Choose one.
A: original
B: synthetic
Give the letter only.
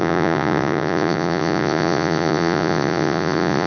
B